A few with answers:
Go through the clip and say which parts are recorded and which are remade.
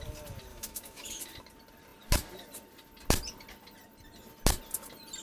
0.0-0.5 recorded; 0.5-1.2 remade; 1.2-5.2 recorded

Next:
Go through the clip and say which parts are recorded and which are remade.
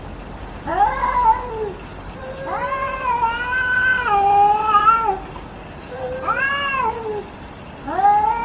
0.0-8.4 recorded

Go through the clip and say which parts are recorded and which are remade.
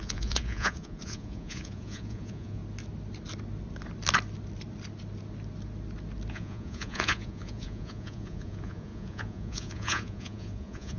0.0-2.6 remade; 2.6-6.3 recorded; 6.3-11.0 remade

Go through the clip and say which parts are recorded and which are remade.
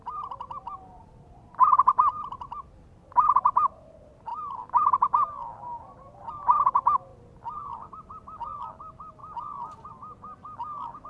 0.0-11.1 recorded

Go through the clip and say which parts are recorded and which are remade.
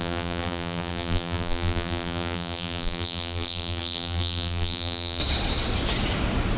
0.0-5.2 remade; 5.2-6.6 recorded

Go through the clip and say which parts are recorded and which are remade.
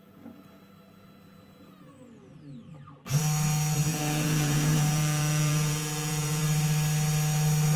0.0-3.9 recorded; 3.9-6.4 remade; 6.4-7.8 recorded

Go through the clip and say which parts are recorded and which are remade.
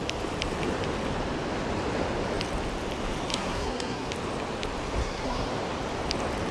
0.0-3.3 recorded; 3.3-4.1 remade; 4.1-5.0 recorded; 5.0-5.5 remade; 5.5-6.5 recorded